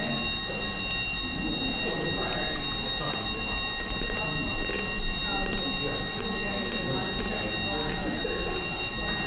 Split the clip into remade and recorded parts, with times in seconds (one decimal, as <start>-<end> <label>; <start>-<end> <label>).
0.0-9.3 recorded